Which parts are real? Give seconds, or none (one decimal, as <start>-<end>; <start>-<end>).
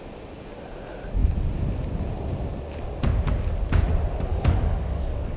0.0-4.3